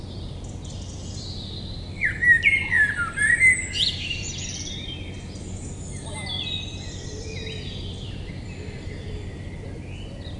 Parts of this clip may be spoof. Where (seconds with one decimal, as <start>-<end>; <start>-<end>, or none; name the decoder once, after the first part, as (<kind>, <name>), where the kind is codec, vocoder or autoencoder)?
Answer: none